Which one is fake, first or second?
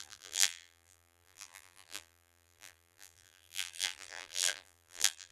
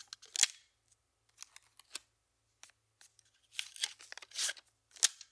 first